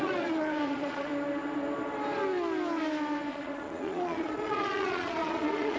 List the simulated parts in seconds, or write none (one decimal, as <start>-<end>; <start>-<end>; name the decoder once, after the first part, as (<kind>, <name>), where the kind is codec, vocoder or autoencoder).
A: 0.0-1.1 (vocoder, Vocos); 3.3-5.8